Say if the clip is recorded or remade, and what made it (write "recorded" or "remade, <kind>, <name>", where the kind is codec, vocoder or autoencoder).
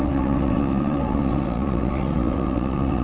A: remade, vocoder, WaveNeXt